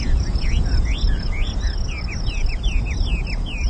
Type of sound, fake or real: real